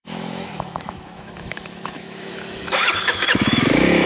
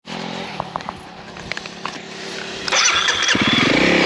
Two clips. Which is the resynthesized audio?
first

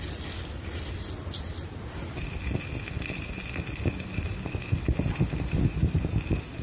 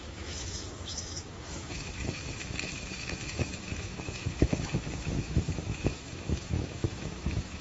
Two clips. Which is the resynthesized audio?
second